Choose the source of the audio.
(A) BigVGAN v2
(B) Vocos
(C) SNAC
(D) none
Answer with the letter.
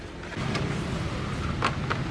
D